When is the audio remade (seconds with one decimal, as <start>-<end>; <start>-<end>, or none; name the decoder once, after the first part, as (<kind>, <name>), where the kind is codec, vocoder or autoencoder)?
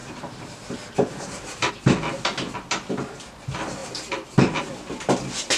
0.0-1.7 (vocoder, BigVGAN v2)